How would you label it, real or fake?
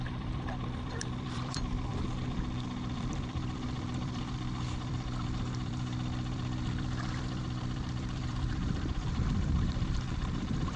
fake